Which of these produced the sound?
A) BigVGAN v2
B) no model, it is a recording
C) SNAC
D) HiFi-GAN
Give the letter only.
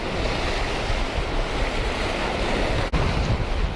B